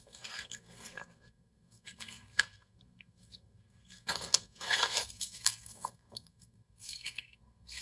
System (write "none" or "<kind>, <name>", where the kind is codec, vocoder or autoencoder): codec, SNAC